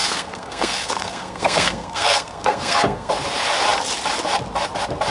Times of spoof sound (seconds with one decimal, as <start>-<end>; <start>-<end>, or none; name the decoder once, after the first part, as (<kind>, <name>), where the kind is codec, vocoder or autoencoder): 0.0-3.1 (codec, SNAC)